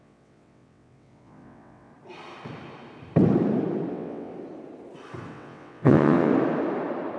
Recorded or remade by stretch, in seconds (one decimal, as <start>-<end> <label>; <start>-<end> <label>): 0.0-1.9 remade; 1.9-3.9 recorded; 3.9-4.3 remade; 4.3-5.3 recorded; 5.3-6.3 remade; 6.3-7.2 recorded